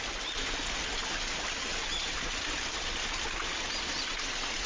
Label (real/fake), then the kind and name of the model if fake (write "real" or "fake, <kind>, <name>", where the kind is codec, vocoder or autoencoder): real